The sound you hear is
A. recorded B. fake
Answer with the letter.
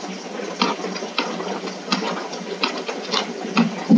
A